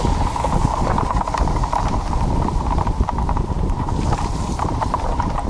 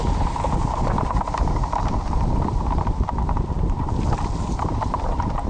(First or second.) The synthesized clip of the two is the first